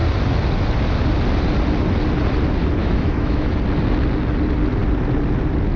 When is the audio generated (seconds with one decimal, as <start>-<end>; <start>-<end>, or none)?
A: 2.8-3.6